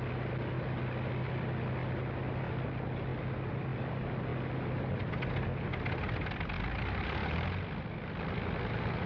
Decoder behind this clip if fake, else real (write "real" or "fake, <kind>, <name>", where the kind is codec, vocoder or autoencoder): real